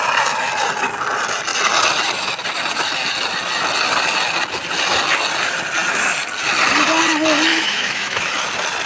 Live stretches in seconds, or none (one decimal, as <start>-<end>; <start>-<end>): 0.0-7.5; 8.3-8.9